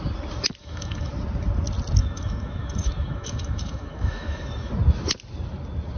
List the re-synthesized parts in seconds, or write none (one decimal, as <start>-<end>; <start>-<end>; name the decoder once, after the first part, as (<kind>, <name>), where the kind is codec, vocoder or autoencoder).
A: 0.6-1.1 (autoencoder, DAC-VAE); 2.0-4.7